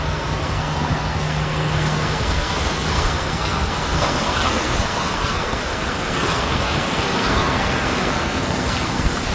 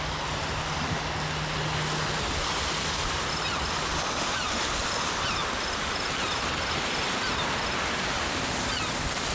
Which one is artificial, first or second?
first